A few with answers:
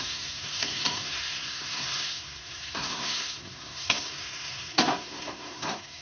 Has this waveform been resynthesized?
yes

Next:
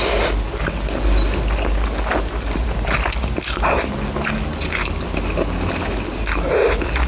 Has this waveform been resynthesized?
no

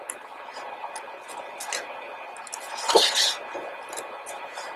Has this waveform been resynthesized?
no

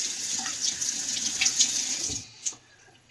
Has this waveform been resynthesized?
yes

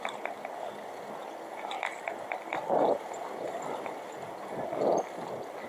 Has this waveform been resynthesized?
no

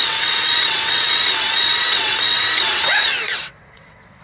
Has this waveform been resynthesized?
yes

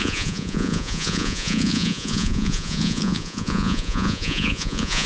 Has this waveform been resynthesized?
yes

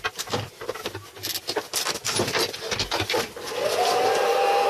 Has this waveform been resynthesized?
no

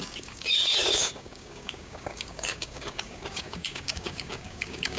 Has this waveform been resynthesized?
yes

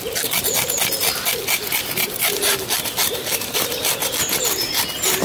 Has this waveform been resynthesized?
no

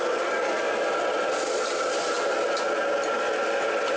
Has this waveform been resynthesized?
no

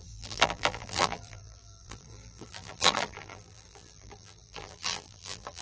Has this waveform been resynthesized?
yes